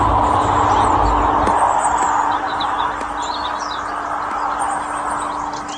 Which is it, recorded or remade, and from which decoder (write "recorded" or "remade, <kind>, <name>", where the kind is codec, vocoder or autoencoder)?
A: recorded